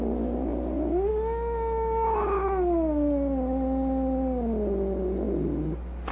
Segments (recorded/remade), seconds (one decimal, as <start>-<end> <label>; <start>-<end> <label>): 0.0-6.1 recorded